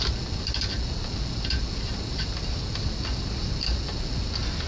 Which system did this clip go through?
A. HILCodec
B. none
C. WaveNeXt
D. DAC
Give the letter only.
B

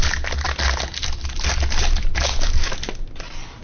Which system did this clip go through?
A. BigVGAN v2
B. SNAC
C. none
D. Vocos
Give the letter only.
C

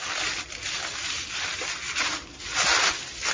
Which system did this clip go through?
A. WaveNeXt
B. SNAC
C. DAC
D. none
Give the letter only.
D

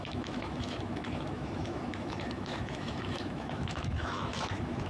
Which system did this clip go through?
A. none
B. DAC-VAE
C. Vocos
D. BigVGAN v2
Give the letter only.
B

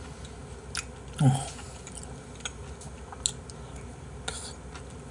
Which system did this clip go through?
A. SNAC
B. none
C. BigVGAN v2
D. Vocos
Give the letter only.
B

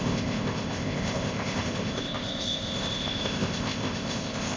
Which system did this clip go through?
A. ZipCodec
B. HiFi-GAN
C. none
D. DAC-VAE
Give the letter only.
A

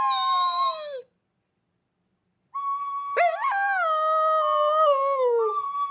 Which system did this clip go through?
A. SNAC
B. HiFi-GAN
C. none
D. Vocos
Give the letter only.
C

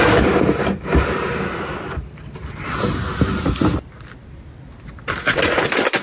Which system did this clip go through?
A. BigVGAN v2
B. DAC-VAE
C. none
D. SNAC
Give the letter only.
A